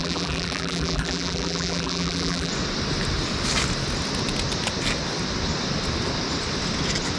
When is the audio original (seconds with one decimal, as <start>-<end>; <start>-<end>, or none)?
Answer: 2.5-7.2